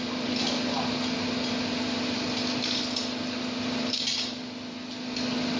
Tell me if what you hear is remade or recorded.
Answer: recorded